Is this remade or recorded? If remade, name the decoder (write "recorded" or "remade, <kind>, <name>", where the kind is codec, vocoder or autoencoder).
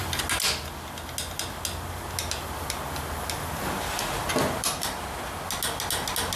recorded